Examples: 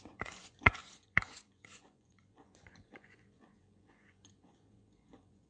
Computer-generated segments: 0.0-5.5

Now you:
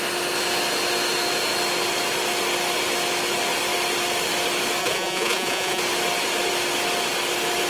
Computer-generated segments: 4.8-5.8

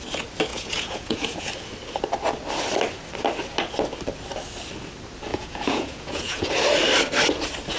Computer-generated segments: 0.5-1.5; 5.3-6.5